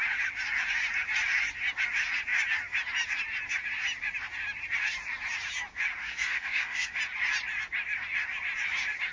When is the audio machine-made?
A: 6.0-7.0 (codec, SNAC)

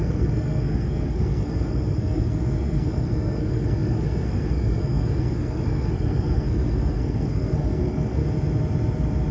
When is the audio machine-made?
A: 0.0-8.2 (codec, SNAC)